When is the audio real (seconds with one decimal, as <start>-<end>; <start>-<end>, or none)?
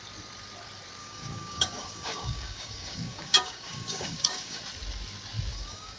0.0-1.0; 4.6-5.5